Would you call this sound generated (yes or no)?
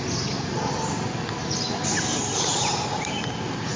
no